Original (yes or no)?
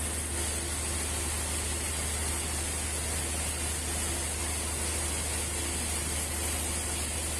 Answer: yes